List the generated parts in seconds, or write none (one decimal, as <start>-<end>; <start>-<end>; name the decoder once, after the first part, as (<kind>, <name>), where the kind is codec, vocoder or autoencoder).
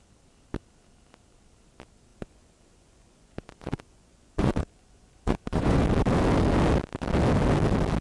2.1-5.8 (vocoder, Vocos)